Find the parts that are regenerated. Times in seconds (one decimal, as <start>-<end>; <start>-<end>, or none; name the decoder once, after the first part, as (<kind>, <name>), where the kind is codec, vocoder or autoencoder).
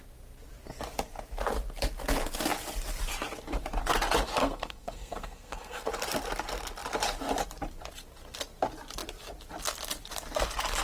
4.4-5.9 (codec, SNAC)